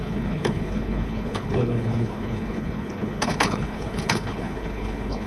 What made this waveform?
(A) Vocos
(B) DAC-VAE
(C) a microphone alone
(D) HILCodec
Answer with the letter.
D